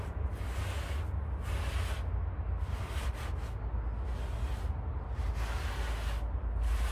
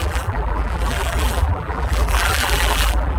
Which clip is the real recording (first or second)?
first